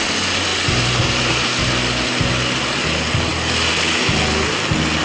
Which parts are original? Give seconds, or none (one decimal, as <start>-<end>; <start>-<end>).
0.0-0.5; 1.6-5.0